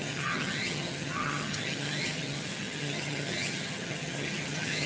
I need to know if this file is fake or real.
fake